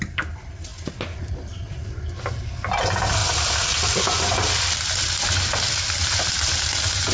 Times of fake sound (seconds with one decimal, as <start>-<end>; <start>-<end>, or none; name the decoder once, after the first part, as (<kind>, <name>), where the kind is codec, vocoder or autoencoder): none